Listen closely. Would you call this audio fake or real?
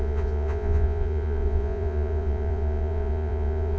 fake